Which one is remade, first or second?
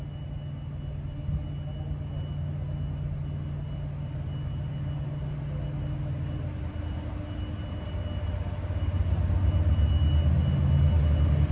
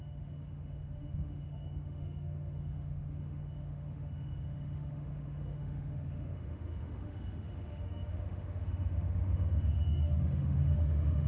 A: second